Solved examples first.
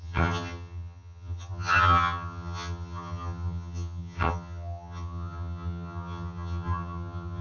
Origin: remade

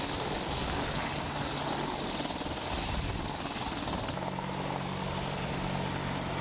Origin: recorded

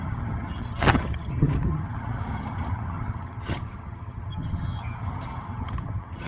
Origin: remade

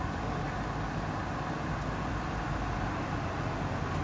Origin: recorded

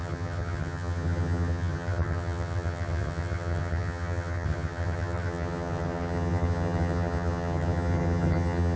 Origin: remade